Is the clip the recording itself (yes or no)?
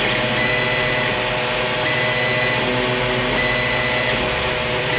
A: yes